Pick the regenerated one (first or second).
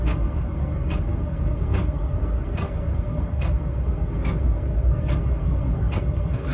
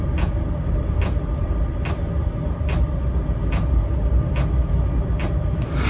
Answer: first